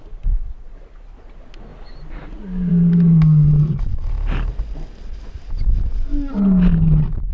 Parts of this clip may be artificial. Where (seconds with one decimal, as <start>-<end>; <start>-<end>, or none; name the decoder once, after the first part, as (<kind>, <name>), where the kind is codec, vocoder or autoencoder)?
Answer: none